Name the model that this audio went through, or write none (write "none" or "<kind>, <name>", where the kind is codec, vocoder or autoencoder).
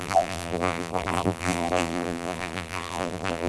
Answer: vocoder, BigVGAN v2